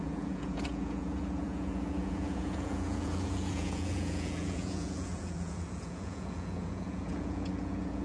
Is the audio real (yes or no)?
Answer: no